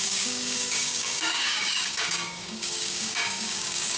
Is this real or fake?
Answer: fake